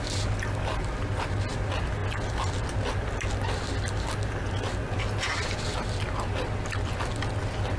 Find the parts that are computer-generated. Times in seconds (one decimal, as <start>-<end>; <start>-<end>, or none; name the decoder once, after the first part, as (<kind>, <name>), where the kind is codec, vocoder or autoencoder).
none